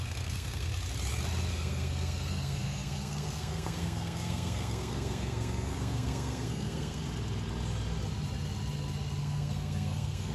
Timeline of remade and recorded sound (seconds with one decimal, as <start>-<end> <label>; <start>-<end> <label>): 0.0-0.7 remade; 0.7-1.5 recorded; 1.5-7.0 remade; 7.0-9.2 recorded; 9.2-10.3 remade